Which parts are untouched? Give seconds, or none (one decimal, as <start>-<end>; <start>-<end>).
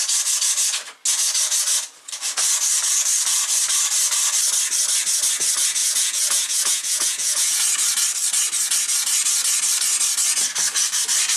0.0-5.8; 7.6-11.4